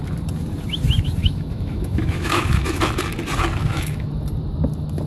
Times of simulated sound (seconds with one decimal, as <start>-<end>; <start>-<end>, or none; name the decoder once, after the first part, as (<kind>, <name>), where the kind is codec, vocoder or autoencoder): 1.2-2.8 (autoencoder, DAC-VAE); 3.6-4.1